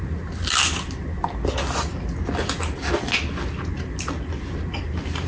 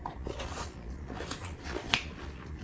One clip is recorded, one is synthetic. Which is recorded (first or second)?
first